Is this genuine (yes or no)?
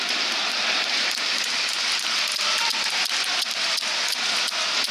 yes